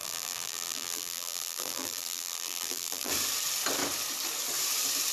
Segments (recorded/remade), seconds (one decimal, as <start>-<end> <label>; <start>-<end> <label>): 0.0-3.1 remade; 3.1-5.1 recorded